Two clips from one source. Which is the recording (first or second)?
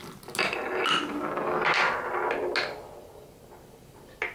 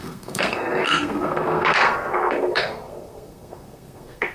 first